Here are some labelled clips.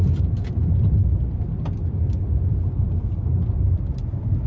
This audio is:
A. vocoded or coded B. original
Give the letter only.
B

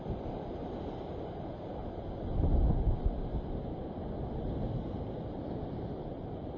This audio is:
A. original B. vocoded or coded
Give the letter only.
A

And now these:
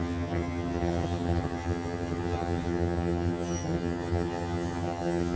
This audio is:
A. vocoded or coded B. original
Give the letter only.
A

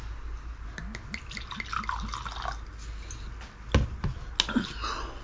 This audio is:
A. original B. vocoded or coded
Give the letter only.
A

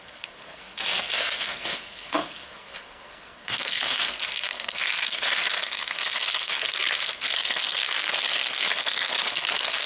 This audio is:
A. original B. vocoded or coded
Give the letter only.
B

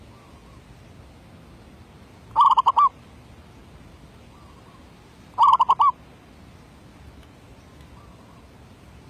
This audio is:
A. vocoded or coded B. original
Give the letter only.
B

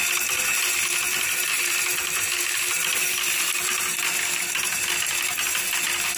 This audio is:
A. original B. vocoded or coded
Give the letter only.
A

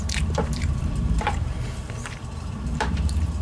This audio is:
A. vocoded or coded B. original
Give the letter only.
A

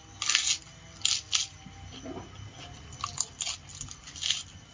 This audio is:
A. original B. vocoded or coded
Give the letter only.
A